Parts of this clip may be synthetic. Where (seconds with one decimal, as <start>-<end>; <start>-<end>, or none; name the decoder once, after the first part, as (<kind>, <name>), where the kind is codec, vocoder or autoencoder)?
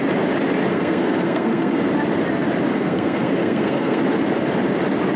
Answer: 0.7-1.9 (codec, SNAC); 2.7-4.0